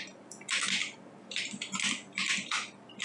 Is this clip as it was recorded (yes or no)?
yes